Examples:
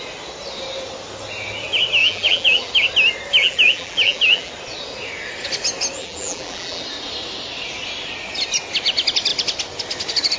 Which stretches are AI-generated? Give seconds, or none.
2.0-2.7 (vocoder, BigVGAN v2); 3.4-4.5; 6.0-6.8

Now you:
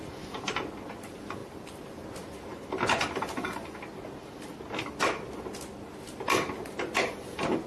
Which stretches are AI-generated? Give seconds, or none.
1.4-2.1 (vocoder, BigVGAN v2)

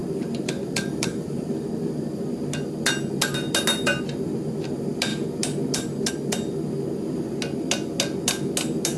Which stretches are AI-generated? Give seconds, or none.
0.0-1.5 (vocoder, BigVGAN v2)

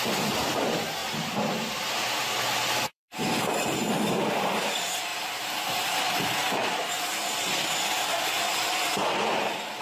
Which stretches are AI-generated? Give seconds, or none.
1.0-2.1 (vocoder, BigVGAN v2); 2.9-4.1; 5.1-6.1; 9.0-9.8

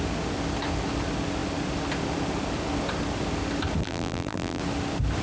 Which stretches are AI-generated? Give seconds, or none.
3.8-4.6 (vocoder, BigVGAN v2)

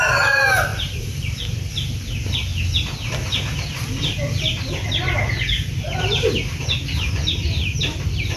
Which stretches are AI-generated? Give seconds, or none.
0.7-1.7 (vocoder, BigVGAN v2)

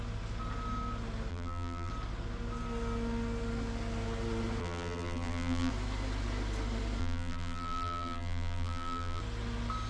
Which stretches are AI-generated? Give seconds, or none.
1.3-1.9 (vocoder, BigVGAN v2); 4.6-5.7; 7.0-9.2

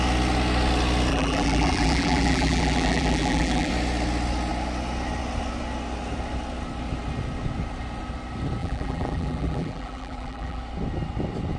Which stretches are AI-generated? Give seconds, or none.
1.1-3.7 (vocoder, BigVGAN v2); 8.6-10.6